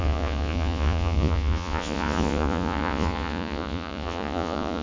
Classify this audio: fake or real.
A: fake